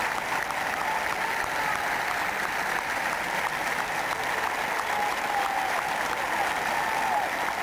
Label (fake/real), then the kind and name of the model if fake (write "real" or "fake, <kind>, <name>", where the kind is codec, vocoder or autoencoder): real